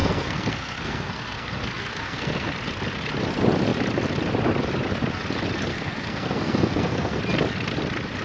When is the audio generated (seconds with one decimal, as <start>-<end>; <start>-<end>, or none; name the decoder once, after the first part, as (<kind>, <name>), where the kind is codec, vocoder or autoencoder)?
0.0-2.5 (codec, SNAC); 5.7-7.2